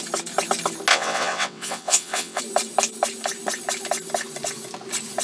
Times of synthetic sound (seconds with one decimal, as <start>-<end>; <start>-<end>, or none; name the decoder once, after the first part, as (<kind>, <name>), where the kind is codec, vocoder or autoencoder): 0.9-2.4 (vocoder, WaveNeXt)